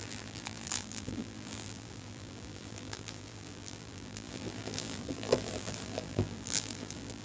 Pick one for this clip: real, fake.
fake